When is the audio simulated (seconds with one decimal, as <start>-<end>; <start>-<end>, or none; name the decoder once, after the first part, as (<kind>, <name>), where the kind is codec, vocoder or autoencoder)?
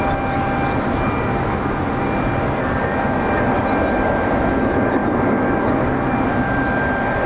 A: none